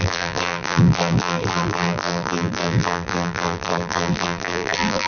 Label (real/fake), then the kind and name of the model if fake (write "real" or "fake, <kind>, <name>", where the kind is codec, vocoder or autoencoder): fake, vocoder, BigVGAN v2